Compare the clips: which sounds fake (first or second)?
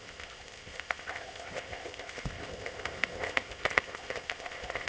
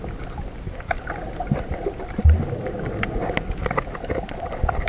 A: first